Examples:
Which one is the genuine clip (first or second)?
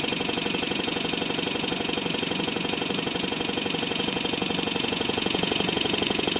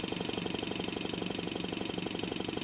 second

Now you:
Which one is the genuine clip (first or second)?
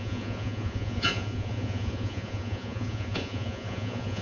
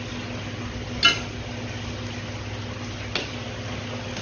second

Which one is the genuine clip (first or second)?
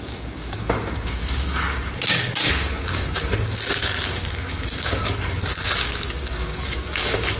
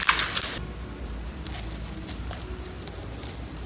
second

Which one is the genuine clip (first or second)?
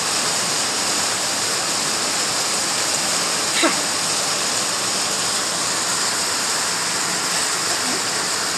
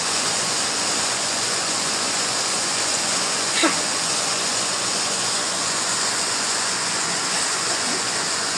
first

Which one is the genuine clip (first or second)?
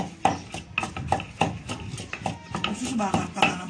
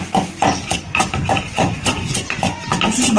first